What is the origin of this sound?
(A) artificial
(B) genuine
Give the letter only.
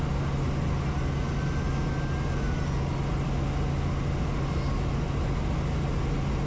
B